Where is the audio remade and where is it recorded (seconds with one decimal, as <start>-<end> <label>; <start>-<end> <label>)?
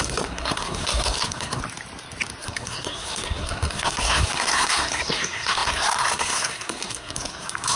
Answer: 0.0-1.6 remade; 1.6-2.4 recorded; 2.4-7.8 remade